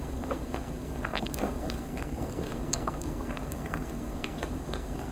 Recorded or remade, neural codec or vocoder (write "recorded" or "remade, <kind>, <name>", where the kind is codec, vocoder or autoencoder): remade, codec, SNAC